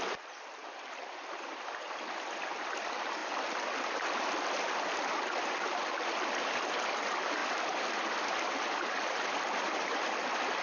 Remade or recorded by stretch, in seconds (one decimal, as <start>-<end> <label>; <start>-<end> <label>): 0.0-10.6 recorded